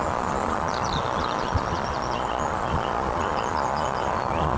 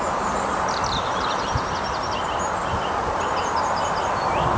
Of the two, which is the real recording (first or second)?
second